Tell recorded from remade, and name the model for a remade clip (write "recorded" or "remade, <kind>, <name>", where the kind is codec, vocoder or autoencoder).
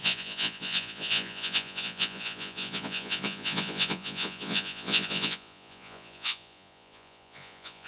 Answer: remade, vocoder, Vocos